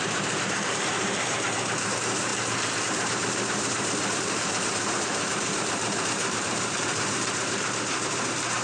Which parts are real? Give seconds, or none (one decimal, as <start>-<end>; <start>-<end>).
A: 2.3-2.8